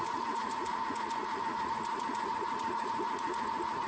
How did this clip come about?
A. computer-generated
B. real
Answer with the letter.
A